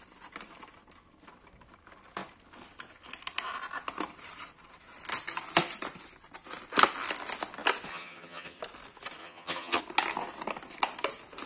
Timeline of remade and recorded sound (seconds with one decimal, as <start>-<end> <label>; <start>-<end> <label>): 0.0-7.9 recorded; 7.9-8.6 remade; 8.6-9.2 recorded; 9.2-9.8 remade; 9.8-11.5 recorded